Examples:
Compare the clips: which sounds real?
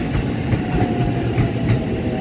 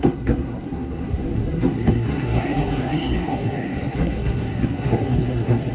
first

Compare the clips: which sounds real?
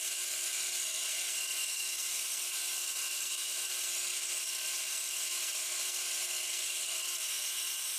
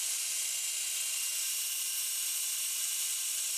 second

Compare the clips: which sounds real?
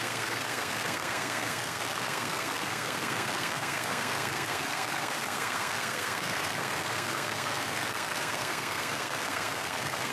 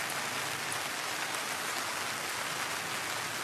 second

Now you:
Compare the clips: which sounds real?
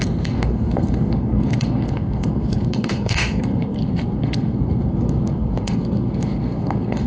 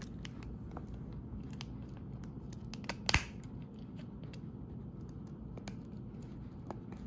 second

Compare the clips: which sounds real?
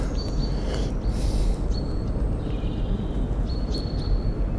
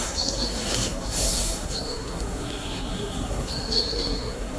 first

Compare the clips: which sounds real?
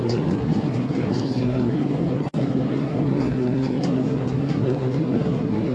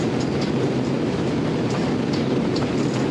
second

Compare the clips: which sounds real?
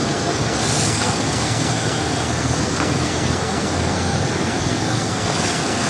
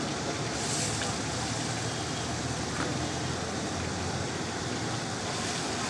second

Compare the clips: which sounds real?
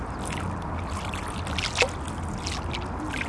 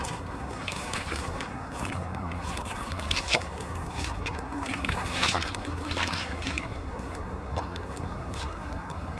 first